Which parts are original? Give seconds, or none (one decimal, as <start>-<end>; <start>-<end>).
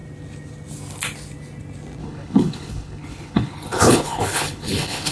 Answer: 0.0-2.0